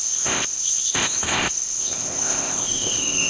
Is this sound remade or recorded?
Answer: remade